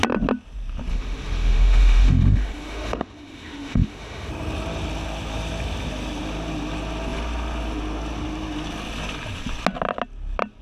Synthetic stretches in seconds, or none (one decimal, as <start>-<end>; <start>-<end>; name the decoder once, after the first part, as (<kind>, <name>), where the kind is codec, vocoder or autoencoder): 0.9-4.3 (autoencoder, DAC-VAE)